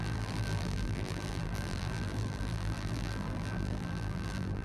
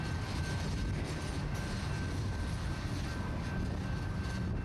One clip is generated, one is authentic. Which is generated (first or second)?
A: first